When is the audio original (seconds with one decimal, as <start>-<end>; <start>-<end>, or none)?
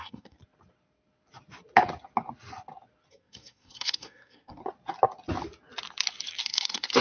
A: 0.4-3.1; 4.6-6.4